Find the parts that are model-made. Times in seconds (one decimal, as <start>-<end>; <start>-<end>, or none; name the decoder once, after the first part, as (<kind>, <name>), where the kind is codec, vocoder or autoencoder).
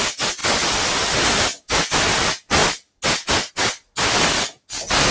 none